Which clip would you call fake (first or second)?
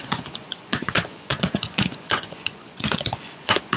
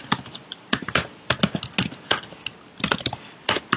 first